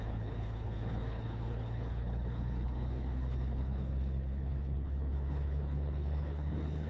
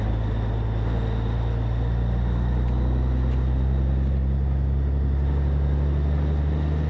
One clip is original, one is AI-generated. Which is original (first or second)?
second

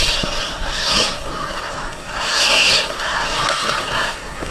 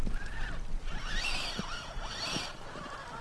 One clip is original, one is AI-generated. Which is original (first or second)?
second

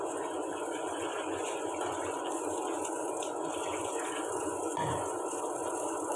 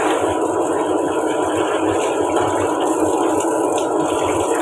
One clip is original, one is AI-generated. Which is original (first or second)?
second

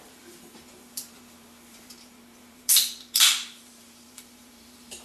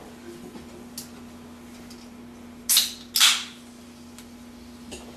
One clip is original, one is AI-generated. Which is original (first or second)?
second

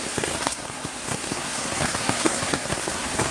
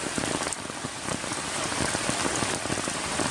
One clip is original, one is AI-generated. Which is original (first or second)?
second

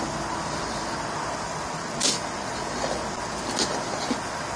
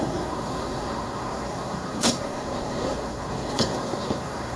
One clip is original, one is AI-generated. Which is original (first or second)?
first